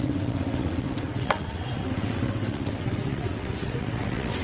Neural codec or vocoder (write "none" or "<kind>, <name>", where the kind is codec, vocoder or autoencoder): vocoder, WaveNeXt